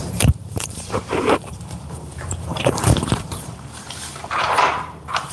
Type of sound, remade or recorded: remade